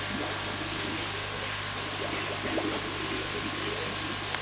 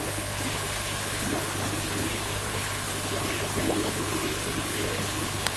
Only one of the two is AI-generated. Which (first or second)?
second